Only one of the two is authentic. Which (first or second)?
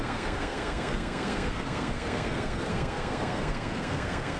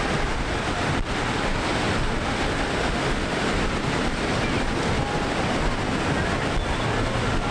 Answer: second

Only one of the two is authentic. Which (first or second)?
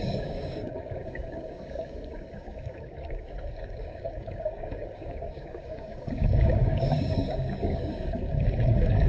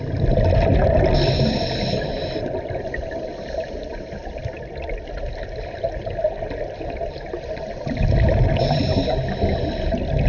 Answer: second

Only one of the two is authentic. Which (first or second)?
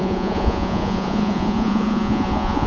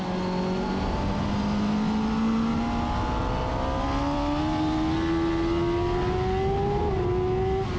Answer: second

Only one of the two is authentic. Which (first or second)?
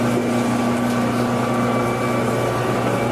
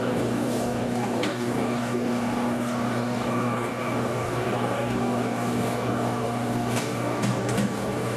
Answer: first